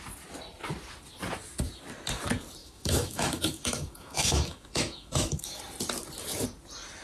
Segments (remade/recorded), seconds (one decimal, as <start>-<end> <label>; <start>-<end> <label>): 0.0-2.6 recorded; 2.6-5.6 remade; 5.6-7.0 recorded